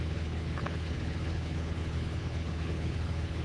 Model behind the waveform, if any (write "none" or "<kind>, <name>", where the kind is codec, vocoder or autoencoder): codec, HILCodec